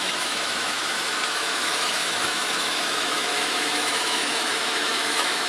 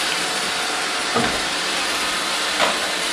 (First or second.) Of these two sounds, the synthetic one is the first